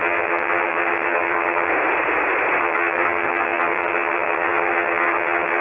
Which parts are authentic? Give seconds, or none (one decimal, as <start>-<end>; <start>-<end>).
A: 1.7-2.6